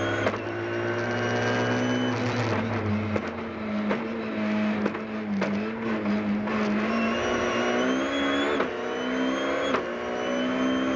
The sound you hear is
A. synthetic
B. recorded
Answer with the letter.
B